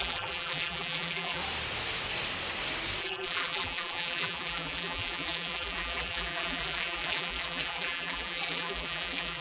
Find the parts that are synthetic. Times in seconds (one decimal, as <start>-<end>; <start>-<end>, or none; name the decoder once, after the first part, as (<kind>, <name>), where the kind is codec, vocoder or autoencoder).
0.0-1.4 (vocoder, BigVGAN v2); 3.0-9.4